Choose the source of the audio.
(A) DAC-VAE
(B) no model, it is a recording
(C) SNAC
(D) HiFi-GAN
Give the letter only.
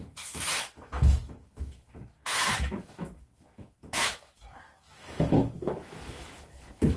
A